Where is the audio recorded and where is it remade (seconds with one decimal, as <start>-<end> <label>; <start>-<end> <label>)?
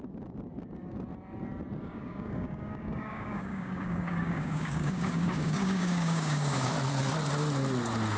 0.0-1.8 recorded; 1.8-6.7 remade; 6.7-8.2 recorded